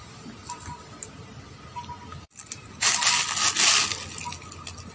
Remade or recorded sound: recorded